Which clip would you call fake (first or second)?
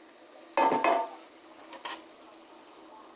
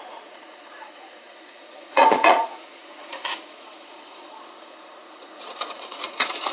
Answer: second